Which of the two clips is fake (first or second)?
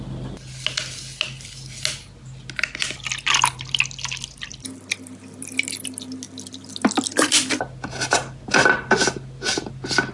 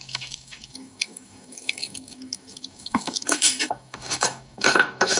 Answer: second